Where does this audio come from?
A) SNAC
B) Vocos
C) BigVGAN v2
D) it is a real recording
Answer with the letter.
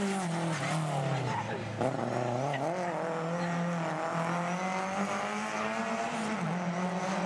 D